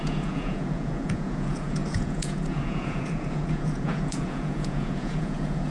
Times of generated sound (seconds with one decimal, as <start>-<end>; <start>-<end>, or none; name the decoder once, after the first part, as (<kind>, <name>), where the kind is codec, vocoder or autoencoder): 0.0-5.7 (vocoder, Vocos)